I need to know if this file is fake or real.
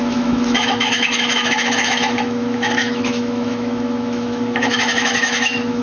fake